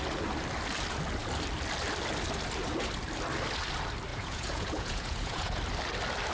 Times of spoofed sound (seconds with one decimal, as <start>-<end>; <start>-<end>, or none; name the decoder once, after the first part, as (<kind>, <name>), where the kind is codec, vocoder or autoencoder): 4.1-5.6 (vocoder, Vocos)